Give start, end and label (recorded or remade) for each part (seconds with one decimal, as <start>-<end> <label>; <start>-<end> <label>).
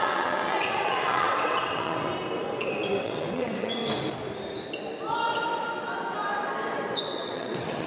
0.0-2.1 remade; 2.1-3.0 recorded; 3.0-3.8 remade; 3.8-7.0 recorded; 7.0-7.9 remade